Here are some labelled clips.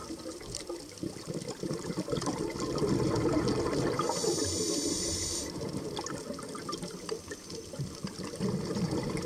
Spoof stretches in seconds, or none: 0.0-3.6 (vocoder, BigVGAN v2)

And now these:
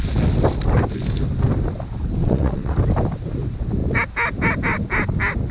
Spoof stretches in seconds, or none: 2.2-2.8 (vocoder, WaveNeXt)

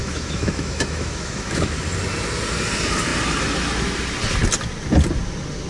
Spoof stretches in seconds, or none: 0.0-1.8 (autoencoder, DAC-VAE)